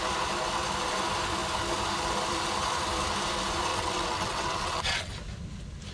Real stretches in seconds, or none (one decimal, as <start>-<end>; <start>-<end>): 0.0-3.7; 5.1-5.9